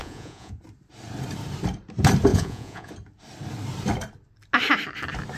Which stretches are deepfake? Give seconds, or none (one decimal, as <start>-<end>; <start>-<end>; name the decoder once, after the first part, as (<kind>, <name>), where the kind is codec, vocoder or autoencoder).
0.0-0.6 (vocoder, Vocos); 2.3-2.9